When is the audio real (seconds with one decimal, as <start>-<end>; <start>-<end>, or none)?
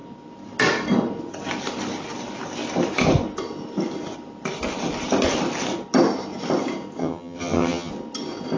0.0-7.0; 7.9-8.6